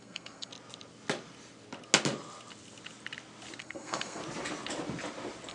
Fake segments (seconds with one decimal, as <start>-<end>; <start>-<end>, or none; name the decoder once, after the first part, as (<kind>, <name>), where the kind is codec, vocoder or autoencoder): 0.0-0.5 (codec, SNAC); 3.6-4.2